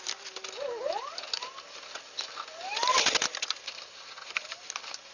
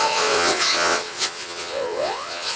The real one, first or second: first